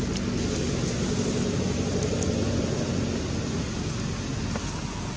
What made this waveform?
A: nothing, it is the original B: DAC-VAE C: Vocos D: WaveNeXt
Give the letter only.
A